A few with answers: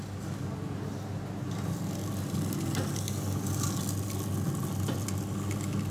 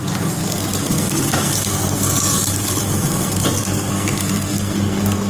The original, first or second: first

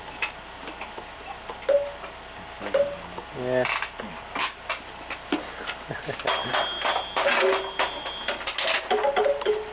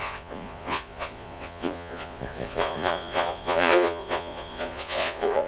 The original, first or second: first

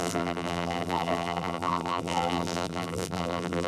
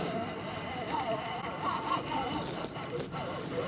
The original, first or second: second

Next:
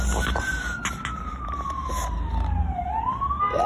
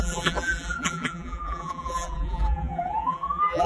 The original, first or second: first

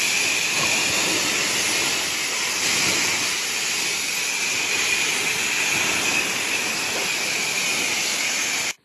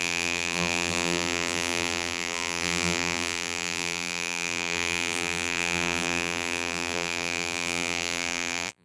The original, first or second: first